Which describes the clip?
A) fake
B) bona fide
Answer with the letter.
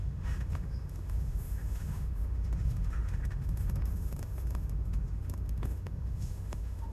A